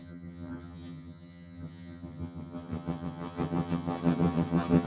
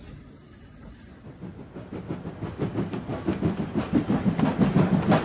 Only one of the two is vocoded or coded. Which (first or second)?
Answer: first